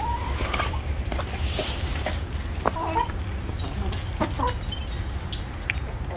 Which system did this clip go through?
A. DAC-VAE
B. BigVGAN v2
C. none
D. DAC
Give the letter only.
C